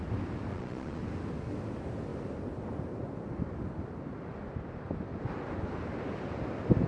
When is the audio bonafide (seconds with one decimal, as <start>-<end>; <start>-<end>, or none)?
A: 0.0-0.5; 1.0-6.9